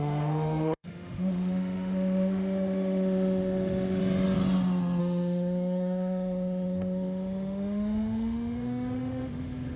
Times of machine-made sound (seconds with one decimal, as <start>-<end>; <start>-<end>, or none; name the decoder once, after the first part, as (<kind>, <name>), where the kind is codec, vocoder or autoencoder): 0.0-4.0 (autoencoder, DAC-VAE); 5.0-9.8